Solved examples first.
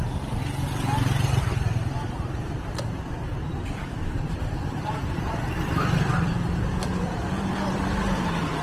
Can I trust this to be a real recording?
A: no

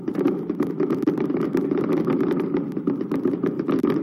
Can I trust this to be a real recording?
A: no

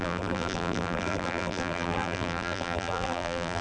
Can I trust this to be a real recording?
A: no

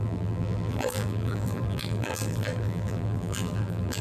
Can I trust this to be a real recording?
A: no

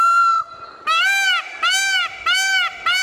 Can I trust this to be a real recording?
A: yes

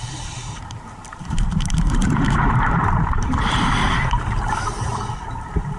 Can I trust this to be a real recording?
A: no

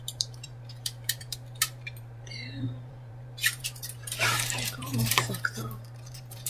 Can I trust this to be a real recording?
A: no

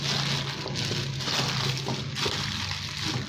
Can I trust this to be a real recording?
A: yes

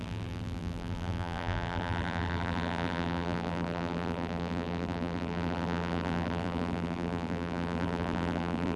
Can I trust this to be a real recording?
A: no